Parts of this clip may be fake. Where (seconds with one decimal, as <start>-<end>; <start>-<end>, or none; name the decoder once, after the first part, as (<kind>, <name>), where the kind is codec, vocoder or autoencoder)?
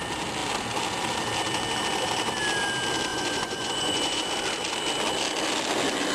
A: 3.1-4.2 (vocoder, Vocos)